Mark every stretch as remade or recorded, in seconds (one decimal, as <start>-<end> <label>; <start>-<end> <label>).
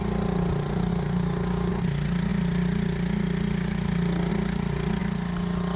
0.0-0.9 recorded; 0.9-1.7 remade; 1.7-5.8 recorded